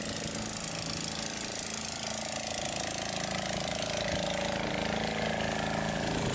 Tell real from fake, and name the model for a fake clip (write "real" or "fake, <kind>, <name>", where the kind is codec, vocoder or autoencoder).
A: real